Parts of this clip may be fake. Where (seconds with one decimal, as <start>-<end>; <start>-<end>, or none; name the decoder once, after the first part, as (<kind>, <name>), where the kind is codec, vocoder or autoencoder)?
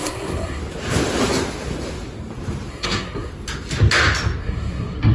0.0-0.6 (codec, SNAC); 2.7-3.3; 4.4-5.1